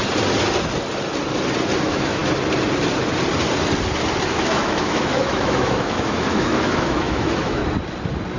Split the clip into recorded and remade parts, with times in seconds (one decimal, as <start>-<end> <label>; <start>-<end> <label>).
0.0-1.8 recorded; 1.8-2.2 remade; 2.2-4.3 recorded; 4.3-7.6 remade; 7.6-8.4 recorded